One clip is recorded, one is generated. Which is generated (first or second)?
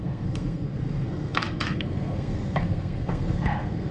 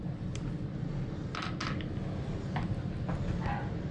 first